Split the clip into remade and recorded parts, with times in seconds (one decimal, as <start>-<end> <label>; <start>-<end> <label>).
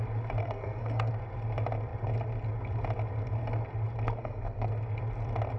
0.0-0.4 recorded; 0.4-1.1 remade; 1.1-4.2 recorded; 4.2-4.7 remade; 4.7-5.6 recorded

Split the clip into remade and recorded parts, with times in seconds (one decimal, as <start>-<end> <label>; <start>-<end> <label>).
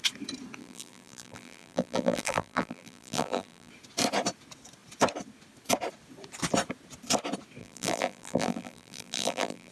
0.0-0.6 recorded; 0.6-3.7 remade; 3.7-7.6 recorded; 7.6-9.7 remade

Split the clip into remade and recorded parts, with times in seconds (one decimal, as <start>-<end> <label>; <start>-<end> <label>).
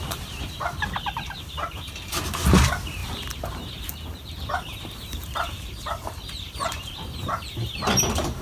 0.0-8.4 remade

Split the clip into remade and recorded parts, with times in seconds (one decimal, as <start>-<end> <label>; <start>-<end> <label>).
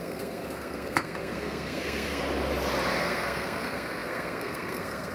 0.0-2.2 remade; 2.2-3.0 recorded; 3.0-5.1 remade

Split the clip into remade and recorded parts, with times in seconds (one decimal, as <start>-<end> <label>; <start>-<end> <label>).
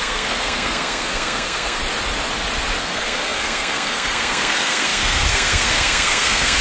0.0-1.8 remade; 1.8-2.8 recorded; 2.8-6.6 remade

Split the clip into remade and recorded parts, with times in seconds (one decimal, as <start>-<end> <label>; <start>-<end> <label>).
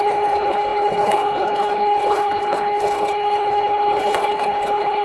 0.0-5.0 remade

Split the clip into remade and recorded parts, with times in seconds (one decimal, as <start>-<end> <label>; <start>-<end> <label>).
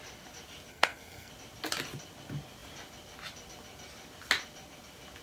0.0-0.7 recorded; 0.7-1.3 remade; 1.3-5.2 recorded